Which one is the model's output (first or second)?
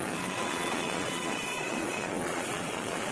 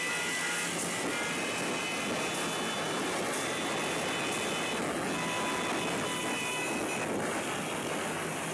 first